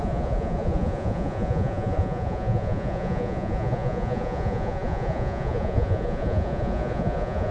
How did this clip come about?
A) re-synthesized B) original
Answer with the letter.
A